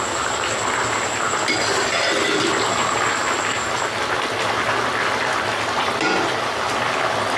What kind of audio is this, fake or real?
real